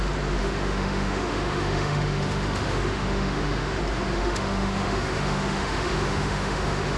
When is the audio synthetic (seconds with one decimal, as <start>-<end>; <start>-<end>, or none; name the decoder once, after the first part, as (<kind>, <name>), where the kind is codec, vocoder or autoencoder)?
0.4-3.8 (autoencoder, DAC-VAE); 4.2-7.0